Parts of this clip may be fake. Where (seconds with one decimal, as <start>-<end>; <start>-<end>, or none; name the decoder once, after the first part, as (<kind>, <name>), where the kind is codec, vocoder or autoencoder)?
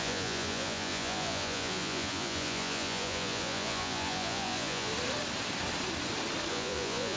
0.0-4.9 (vocoder, Vocos); 6.5-7.2